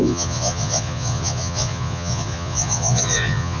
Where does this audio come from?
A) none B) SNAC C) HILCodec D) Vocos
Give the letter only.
D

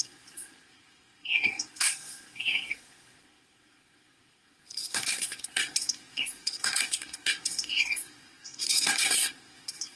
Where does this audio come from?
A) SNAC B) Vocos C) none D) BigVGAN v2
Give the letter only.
A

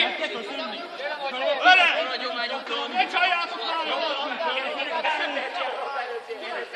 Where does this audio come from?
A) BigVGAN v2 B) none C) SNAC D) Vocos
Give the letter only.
B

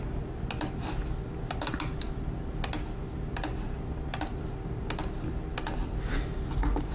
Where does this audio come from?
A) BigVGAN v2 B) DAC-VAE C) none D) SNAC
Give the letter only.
C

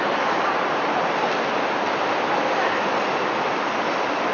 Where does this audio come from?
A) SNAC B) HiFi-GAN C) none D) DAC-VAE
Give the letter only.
C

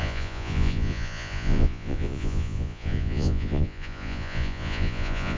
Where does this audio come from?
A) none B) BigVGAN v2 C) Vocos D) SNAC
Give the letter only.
C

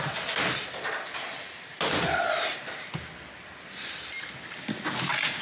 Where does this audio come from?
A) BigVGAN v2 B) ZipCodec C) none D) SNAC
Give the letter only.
C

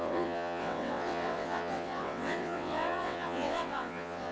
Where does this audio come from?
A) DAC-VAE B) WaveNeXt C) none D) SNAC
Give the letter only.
B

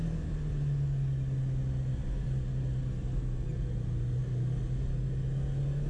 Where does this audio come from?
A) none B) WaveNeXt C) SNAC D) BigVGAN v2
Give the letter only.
A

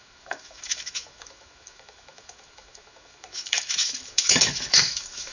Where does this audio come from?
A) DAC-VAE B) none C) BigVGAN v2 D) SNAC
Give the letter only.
A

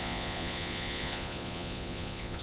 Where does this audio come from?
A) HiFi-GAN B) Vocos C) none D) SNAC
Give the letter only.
B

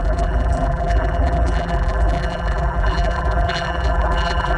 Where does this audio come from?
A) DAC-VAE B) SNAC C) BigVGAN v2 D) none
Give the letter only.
C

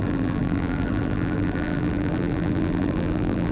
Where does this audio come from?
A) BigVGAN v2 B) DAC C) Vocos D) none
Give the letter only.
A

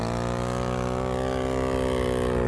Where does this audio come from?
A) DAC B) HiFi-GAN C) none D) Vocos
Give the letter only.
C